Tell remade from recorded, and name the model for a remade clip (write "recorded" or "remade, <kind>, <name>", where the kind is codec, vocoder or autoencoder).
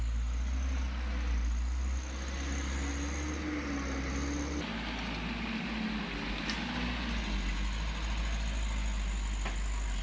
recorded